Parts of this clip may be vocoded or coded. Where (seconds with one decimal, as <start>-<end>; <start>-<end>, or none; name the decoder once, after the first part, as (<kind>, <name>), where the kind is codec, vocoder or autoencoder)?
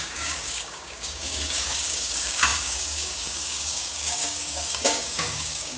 0.0-5.8 (codec, DAC)